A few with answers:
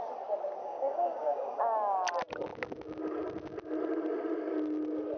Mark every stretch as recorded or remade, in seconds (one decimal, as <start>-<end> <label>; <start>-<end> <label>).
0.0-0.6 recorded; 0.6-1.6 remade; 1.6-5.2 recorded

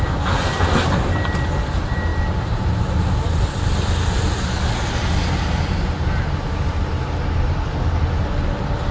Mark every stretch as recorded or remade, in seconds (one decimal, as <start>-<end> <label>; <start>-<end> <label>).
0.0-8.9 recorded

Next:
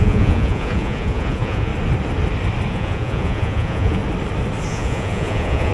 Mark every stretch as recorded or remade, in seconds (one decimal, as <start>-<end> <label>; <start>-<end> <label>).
0.0-1.7 remade; 1.7-2.7 recorded; 2.7-4.0 remade; 4.0-4.7 recorded; 4.7-5.7 remade